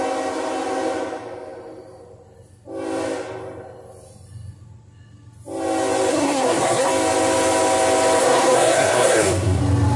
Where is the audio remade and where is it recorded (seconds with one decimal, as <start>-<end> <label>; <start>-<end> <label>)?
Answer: 0.0-6.1 recorded; 6.1-6.9 remade; 6.9-8.2 recorded; 8.2-9.6 remade; 9.6-10.0 recorded